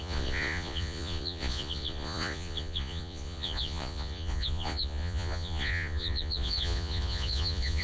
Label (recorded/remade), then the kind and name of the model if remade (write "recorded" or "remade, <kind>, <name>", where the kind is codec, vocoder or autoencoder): remade, vocoder, Vocos